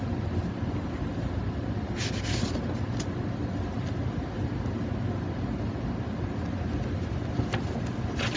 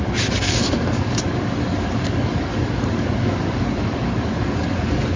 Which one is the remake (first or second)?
second